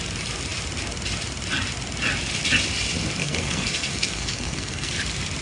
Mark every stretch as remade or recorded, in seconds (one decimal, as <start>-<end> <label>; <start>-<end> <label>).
0.0-3.2 recorded; 3.2-4.9 remade; 4.9-5.4 recorded